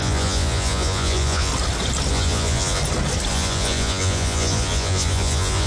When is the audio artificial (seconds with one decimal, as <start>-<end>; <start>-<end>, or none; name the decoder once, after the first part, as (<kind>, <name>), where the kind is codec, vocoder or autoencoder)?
0.0-1.5 (vocoder, Vocos); 2.1-2.8; 3.3-5.7